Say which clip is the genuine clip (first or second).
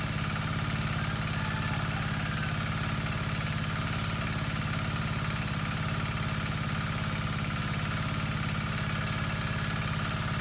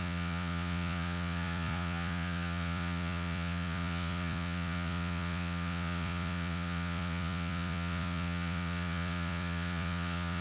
first